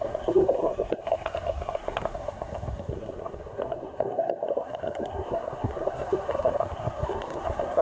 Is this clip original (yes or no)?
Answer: no